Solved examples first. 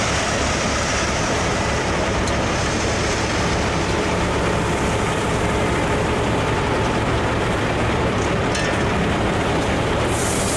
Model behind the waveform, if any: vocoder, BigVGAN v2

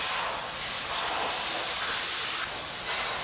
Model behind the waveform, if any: none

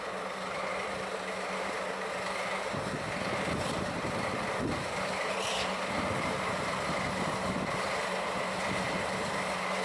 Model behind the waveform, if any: none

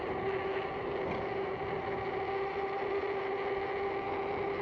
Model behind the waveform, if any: none